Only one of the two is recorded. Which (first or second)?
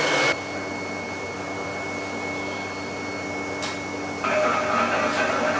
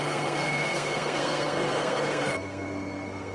first